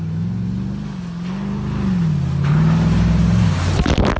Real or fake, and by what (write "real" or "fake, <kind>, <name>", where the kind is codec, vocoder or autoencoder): real